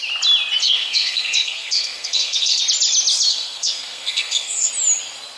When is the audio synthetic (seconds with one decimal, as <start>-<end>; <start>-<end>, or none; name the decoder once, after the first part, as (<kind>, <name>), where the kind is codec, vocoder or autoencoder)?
0.6-2.6 (codec, SNAC); 3.3-4.7